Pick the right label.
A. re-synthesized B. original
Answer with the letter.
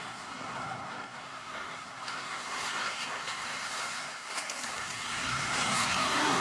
A